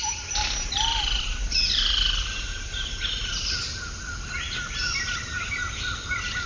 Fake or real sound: real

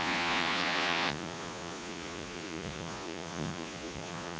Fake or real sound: fake